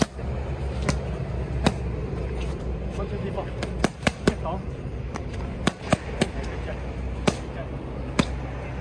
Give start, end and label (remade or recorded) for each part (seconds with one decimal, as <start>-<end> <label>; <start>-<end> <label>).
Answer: 0.0-2.0 recorded; 2.0-3.3 remade; 3.3-3.9 recorded; 3.9-5.9 remade; 5.9-8.8 recorded